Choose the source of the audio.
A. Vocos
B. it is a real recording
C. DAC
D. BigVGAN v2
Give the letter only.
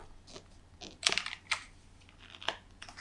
B